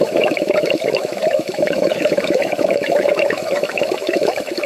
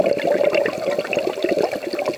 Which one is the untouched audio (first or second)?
second